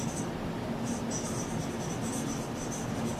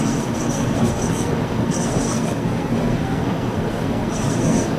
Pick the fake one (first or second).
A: second